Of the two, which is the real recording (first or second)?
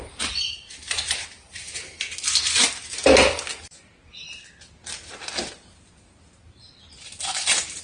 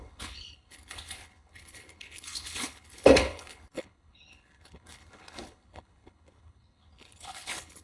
first